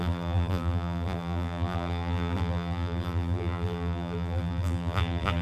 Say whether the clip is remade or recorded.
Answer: remade